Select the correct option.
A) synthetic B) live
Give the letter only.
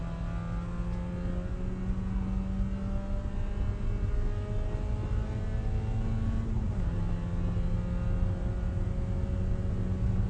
B